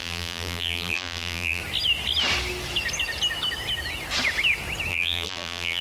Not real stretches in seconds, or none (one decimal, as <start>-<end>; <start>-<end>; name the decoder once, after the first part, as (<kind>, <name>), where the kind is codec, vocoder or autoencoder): 0.0-1.6 (vocoder, BigVGAN v2); 4.9-5.8